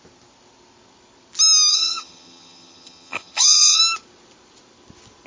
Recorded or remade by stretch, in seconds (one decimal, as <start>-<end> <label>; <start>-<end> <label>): 0.0-1.7 recorded; 1.7-3.8 remade; 3.8-5.3 recorded